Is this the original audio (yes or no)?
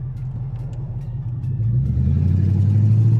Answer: yes